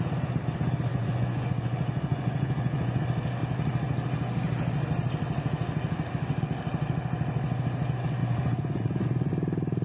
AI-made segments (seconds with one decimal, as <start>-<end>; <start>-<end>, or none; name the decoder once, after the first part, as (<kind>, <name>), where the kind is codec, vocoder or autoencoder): 0.9-3.0 (vocoder, Vocos); 8.2-9.3